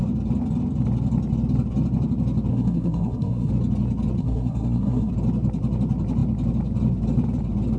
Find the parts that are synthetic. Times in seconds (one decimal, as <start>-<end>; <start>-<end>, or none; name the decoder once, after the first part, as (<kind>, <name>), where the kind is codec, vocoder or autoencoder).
2.5-3.5 (codec, SNAC); 4.2-5.1